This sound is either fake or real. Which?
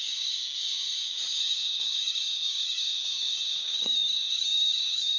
fake